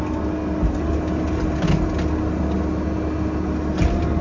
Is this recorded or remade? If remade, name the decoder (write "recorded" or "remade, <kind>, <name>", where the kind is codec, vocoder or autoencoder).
recorded